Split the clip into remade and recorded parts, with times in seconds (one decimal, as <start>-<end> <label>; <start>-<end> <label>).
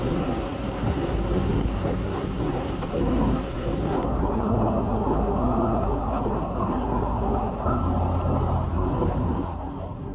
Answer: 0.0-7.8 remade; 7.8-8.7 recorded; 8.7-10.1 remade